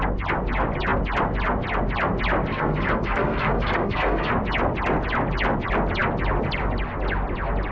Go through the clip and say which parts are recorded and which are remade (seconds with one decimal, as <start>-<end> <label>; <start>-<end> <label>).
0.0-2.5 recorded; 2.5-4.3 remade; 4.3-7.7 recorded